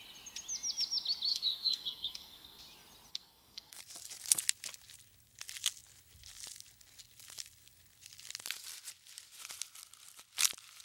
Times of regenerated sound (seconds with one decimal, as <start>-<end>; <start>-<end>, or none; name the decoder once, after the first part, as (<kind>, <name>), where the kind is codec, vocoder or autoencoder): 1.3-2.6 (codec, SNAC); 3.1-3.8

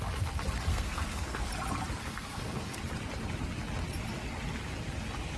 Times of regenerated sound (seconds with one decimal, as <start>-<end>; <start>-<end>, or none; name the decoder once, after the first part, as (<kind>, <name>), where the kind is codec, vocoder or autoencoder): 0.7-1.5 (codec, SNAC); 2.0-2.8

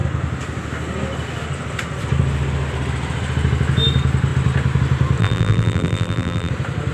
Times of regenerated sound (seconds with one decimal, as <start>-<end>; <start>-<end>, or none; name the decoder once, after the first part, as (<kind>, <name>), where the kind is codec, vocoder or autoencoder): 5.2-6.5 (vocoder, BigVGAN v2)

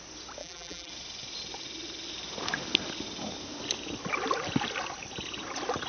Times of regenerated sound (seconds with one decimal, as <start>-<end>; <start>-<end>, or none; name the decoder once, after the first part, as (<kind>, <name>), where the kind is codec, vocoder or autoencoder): 0.4-0.9 (vocoder, BigVGAN v2)